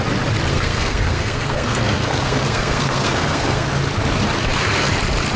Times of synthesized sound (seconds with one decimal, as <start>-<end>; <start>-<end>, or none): 0.5-3.7